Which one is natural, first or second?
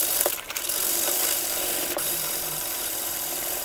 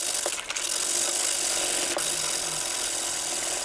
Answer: second